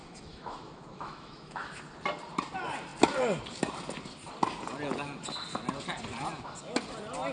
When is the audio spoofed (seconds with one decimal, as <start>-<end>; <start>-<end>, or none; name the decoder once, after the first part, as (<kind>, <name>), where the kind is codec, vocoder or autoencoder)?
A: 0.0-1.8 (autoencoder, DAC-VAE)